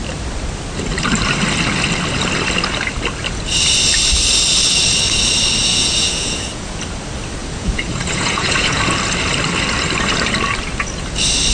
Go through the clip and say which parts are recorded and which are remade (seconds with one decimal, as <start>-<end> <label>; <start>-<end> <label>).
0.0-5.7 recorded; 5.7-6.8 remade; 6.8-7.4 recorded; 7.4-8.8 remade; 8.8-11.5 recorded